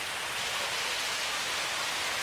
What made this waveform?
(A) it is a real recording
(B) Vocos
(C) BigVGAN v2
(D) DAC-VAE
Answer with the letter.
A